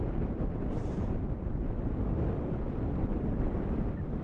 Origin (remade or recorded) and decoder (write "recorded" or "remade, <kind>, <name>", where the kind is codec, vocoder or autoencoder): recorded